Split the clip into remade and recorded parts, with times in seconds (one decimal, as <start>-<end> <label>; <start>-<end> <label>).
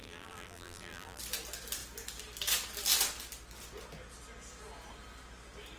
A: 0.0-1.2 remade; 1.2-5.8 recorded